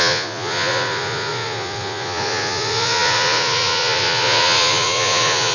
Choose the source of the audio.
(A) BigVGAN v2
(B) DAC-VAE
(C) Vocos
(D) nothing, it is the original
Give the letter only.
C